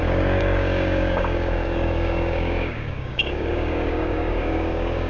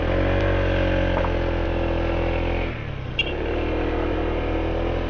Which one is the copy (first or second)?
first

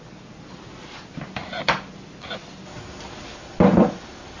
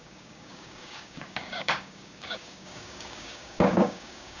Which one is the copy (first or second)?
second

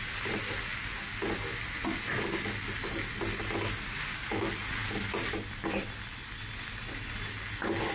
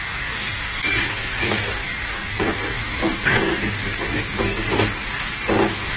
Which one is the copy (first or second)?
second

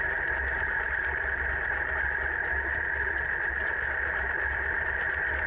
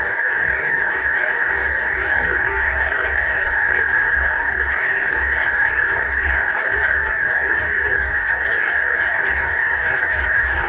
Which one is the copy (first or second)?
second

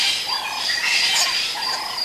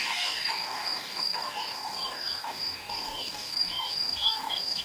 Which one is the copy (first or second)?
second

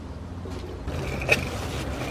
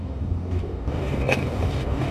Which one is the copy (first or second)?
second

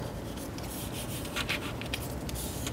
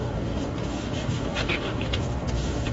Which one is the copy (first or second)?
second